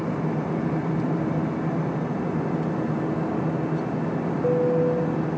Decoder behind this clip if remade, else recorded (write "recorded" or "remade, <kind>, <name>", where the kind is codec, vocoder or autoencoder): recorded